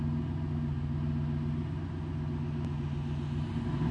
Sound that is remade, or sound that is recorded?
recorded